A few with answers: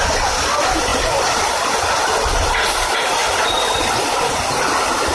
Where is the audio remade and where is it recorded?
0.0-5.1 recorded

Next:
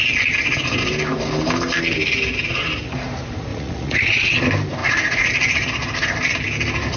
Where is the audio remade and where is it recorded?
0.0-3.5 recorded; 3.5-4.3 remade; 4.3-4.8 recorded; 4.8-5.3 remade; 5.3-7.0 recorded

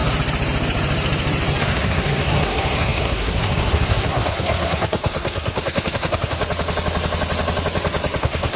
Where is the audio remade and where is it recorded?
0.0-1.6 recorded; 1.6-6.4 remade; 6.4-8.2 recorded; 8.2-8.6 remade

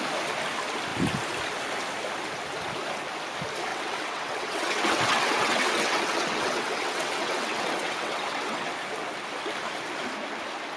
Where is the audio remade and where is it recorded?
0.0-3.7 recorded; 3.7-8.7 remade; 8.7-10.8 recorded